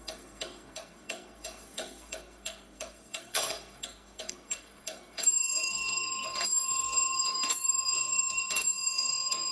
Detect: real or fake fake